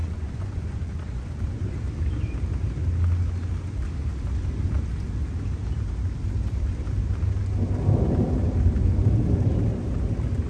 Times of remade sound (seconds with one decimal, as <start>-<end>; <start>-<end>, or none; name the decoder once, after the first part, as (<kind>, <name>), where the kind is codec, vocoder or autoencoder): 0.0-1.7 (vocoder, Vocos)